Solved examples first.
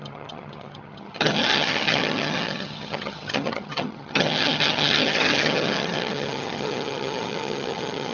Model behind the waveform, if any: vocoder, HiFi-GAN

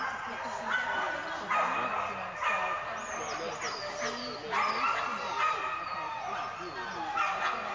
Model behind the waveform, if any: none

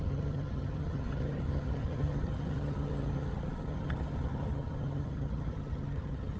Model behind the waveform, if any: vocoder, HiFi-GAN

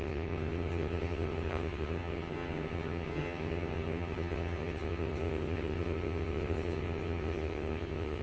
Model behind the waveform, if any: vocoder, HiFi-GAN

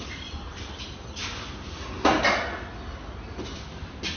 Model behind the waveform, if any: none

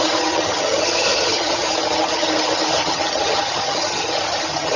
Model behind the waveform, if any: vocoder, HiFi-GAN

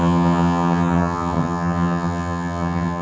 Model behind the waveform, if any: vocoder, HiFi-GAN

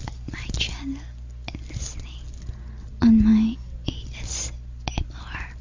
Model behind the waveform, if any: none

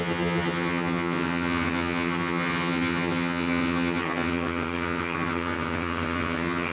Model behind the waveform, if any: vocoder, HiFi-GAN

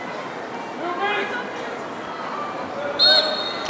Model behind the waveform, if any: none